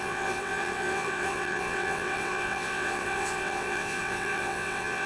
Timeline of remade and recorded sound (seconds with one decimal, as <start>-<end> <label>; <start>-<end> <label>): 0.0-5.1 remade